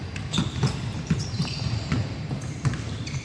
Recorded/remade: recorded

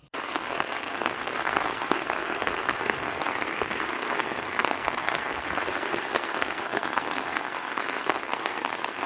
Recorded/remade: remade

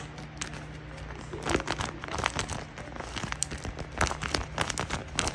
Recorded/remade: recorded